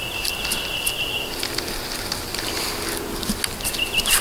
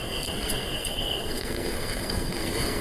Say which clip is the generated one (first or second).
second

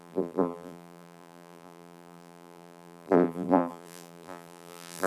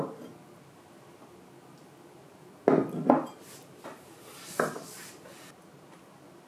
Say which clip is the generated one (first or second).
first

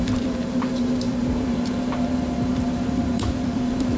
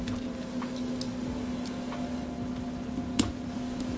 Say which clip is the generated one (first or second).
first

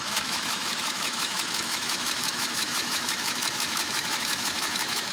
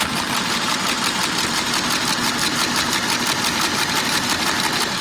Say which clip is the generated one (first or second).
first